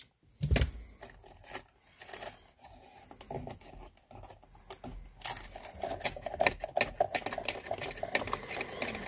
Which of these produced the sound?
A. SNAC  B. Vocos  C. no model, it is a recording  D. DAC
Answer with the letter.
C